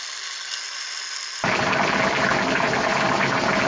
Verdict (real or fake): real